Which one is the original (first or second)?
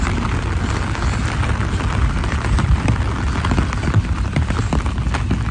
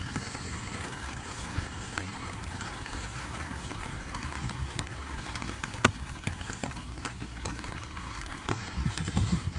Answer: first